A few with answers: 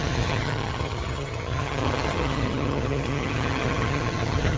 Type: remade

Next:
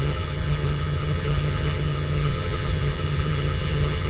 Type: remade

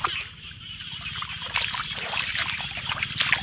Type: recorded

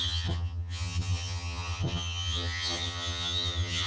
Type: remade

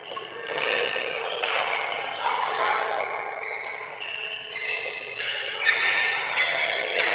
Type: remade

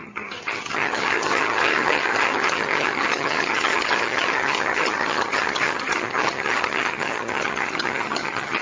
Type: remade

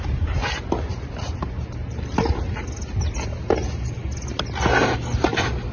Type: recorded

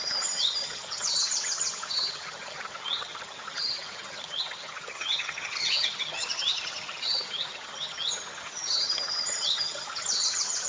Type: remade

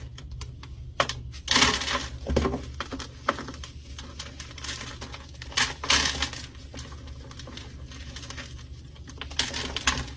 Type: recorded